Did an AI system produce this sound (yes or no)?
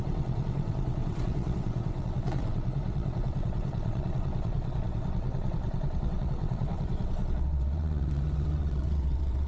yes